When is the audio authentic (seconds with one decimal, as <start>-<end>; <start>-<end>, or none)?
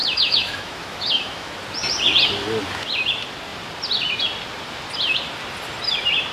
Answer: 1.5-6.3